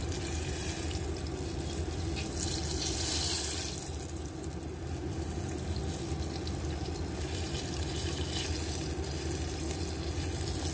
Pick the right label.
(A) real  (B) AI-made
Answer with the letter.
A